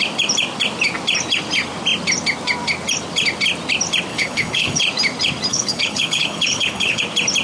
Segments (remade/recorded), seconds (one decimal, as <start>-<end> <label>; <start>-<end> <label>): 0.0-4.1 recorded; 4.1-4.8 remade; 4.8-5.5 recorded; 5.5-7.0 remade; 7.0-7.4 recorded